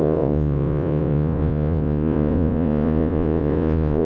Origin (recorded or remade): remade